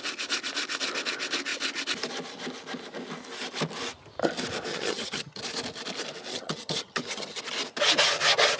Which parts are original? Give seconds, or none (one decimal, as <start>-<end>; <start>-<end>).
0.0-4.7; 5.4-6.3; 7.4-8.6